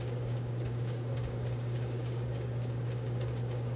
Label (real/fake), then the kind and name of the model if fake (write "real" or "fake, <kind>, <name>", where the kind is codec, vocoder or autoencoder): fake, codec, DAC